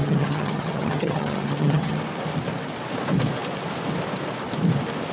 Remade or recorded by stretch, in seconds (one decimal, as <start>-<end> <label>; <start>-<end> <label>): 0.0-2.0 remade; 2.0-5.1 recorded